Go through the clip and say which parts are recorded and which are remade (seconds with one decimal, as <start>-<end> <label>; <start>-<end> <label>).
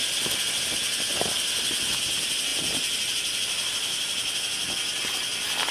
0.0-5.7 recorded